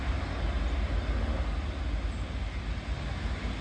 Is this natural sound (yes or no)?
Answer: yes